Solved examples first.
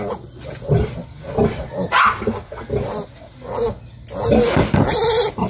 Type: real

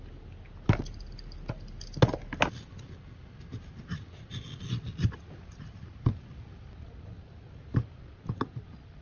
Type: real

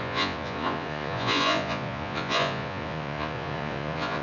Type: fake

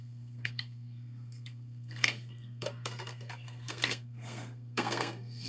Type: fake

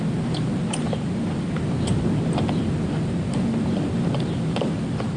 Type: real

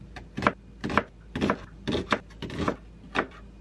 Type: real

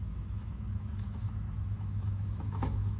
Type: fake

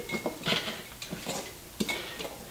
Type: real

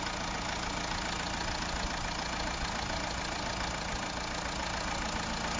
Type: real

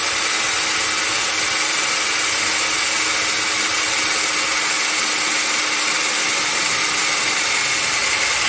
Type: real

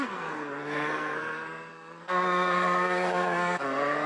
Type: fake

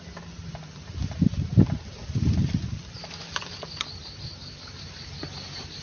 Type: real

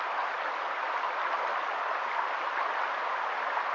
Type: real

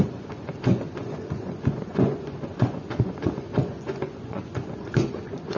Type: fake